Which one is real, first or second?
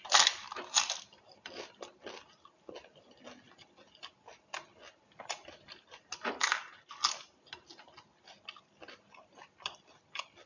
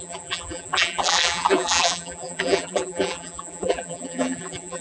first